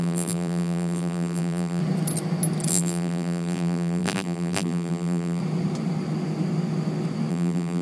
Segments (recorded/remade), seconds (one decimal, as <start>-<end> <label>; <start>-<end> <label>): 0.0-1.8 remade; 1.8-2.7 recorded; 2.7-5.4 remade; 5.4-7.3 recorded; 7.3-7.8 remade